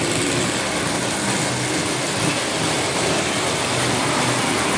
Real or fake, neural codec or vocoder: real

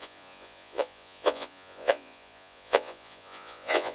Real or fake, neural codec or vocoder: fake, vocoder, Vocos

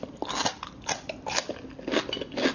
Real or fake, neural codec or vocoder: real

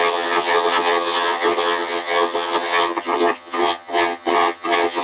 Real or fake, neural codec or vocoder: fake, vocoder, HiFi-GAN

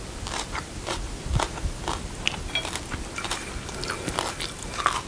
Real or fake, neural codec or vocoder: real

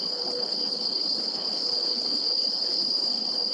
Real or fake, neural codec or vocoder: fake, codec, HILCodec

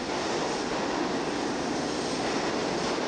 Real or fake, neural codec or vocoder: real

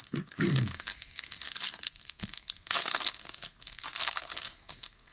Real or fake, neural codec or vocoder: fake, codec, SNAC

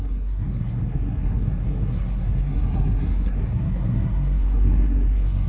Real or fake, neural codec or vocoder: fake, codec, SNAC